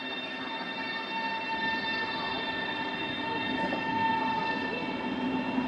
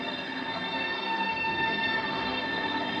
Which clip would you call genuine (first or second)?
first